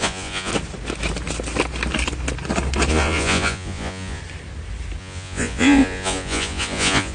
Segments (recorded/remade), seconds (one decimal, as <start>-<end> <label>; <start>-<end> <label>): 0.0-0.5 remade; 0.5-2.9 recorded; 2.9-4.2 remade; 4.2-5.0 recorded; 5.0-7.1 remade